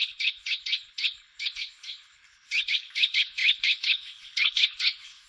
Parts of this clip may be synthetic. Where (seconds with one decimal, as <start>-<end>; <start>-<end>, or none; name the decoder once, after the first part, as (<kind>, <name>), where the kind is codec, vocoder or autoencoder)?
0.0-5.3 (codec, HILCodec)